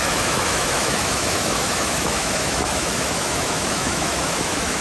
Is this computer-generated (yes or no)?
yes